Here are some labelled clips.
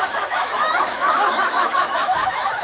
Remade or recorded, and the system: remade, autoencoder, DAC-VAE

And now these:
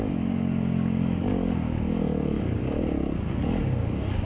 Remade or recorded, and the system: remade, codec, DAC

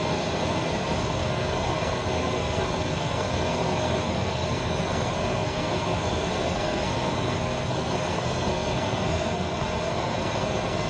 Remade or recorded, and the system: remade, codec, SNAC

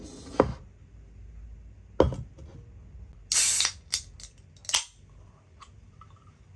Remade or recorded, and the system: recorded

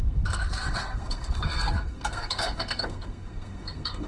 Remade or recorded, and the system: remade, codec, SNAC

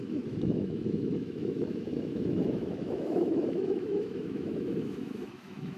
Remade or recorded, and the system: remade, autoencoder, DAC-VAE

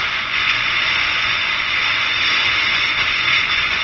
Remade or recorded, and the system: remade, vocoder, Vocos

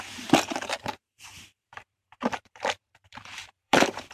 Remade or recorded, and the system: remade, vocoder, BigVGAN v2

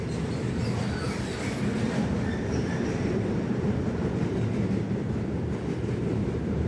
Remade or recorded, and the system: remade, vocoder, BigVGAN v2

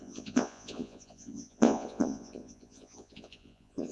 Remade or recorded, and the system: remade, vocoder, Vocos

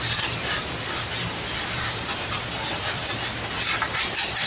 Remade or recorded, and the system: recorded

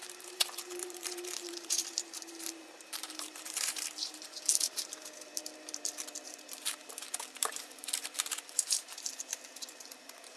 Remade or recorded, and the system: remade, vocoder, BigVGAN v2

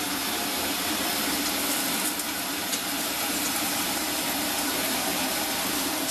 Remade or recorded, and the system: recorded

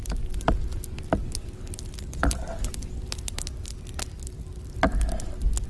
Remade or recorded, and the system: recorded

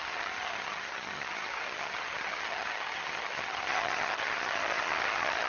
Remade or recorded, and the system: remade, vocoder, HiFi-GAN